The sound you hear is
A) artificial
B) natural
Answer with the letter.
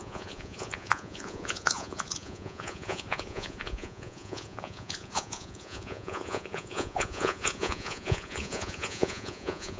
A